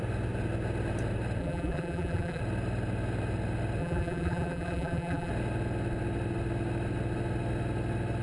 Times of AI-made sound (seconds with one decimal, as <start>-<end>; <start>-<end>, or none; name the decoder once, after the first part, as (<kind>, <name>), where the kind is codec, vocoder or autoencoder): 1.4-2.4 (vocoder, BigVGAN v2); 3.8-5.3